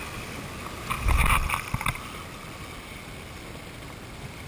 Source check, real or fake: real